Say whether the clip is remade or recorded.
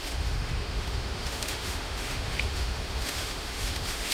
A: remade